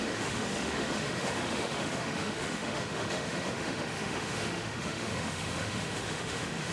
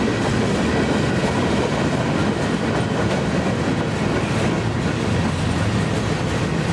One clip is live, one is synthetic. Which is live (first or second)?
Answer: second